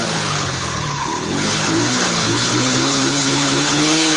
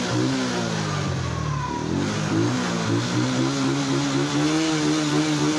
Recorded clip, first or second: second